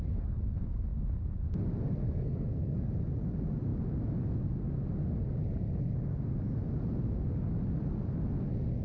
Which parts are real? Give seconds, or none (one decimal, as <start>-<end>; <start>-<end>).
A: 0.0-2.0; 2.8-8.8

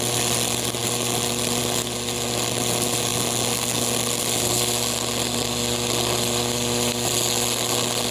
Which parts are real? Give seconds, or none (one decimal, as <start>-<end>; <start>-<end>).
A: 0.0-8.1

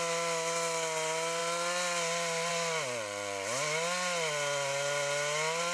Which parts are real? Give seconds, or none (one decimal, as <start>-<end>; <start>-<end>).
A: 0.0-5.7

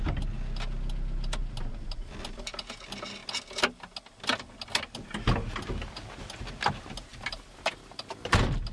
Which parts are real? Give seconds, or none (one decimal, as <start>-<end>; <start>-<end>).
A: 0.0-8.7

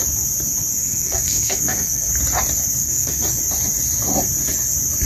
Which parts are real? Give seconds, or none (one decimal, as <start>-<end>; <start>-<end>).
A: 0.0-0.8; 2.1-2.8; 3.4-5.0